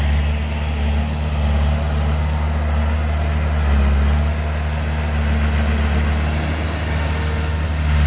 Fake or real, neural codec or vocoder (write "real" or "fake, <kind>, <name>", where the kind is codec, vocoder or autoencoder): real